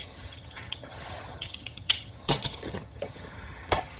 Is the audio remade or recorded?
remade